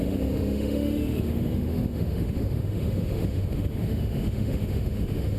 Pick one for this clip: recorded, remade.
remade